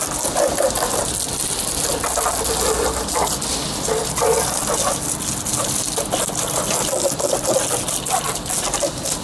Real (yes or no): yes